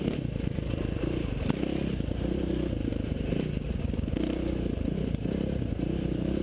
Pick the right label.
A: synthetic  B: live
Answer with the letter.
B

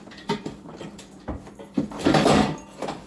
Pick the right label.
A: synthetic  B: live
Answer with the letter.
A